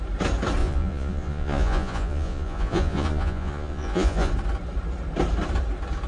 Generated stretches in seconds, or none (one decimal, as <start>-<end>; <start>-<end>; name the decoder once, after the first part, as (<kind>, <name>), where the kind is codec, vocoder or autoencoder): 0.6-4.3 (vocoder, Vocos)